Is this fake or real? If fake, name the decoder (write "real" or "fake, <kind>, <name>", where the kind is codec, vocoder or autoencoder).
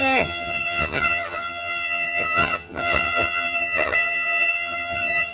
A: fake, vocoder, HiFi-GAN